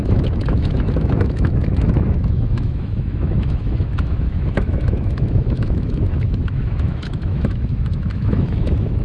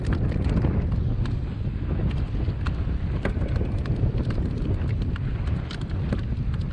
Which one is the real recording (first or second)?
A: second